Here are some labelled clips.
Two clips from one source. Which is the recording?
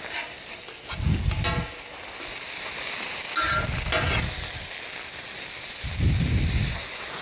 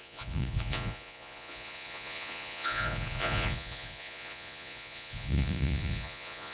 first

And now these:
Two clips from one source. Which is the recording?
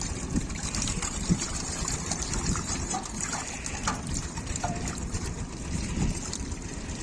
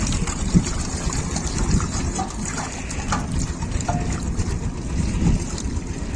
second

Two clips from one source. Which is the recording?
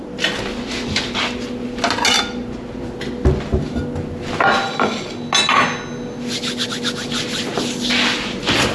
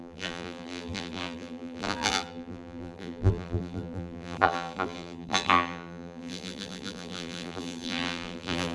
first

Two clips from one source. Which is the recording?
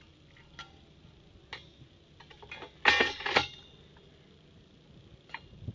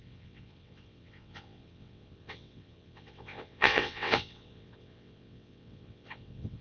first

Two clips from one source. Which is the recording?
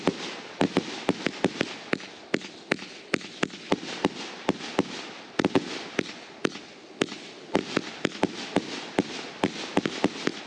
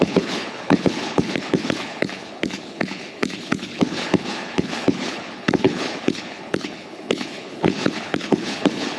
first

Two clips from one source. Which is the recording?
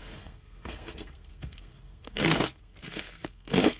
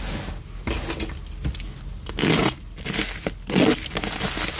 second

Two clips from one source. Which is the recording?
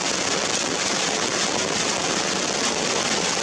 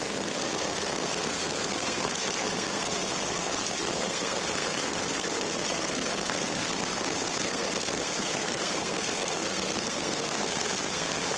first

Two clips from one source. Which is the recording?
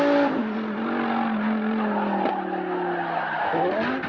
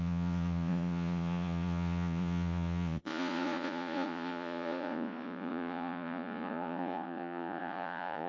first